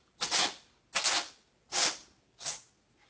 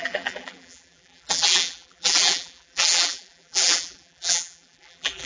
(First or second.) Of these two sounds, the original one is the first